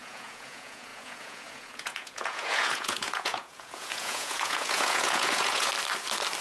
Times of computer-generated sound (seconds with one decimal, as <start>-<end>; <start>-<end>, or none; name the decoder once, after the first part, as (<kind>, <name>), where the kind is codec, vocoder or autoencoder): 0.0-5.7 (vocoder, Vocos)